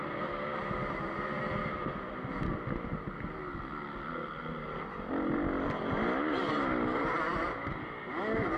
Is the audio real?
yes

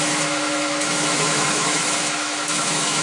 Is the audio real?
no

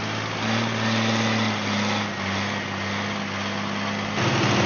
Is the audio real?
yes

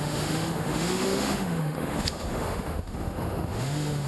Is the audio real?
no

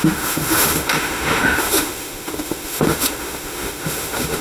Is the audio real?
no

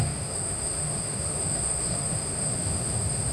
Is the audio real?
no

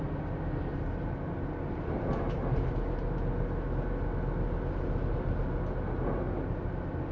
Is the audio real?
yes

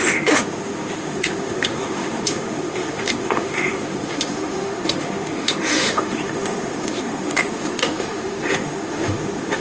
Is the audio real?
no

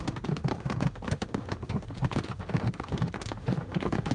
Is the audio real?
no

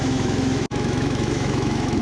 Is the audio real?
no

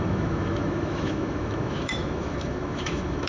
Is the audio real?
no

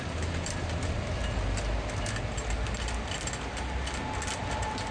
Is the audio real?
yes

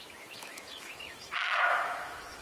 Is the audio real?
no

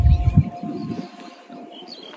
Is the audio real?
yes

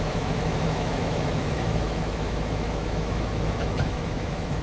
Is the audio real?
no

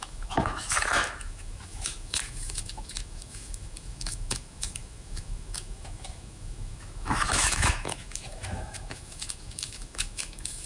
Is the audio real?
no